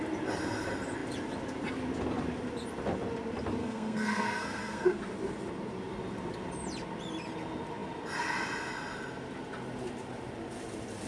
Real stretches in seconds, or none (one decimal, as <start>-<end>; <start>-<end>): 0.0-3.6; 5.0-11.1